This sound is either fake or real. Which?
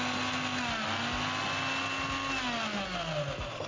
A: real